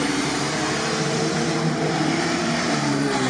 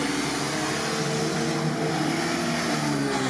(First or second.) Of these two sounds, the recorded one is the second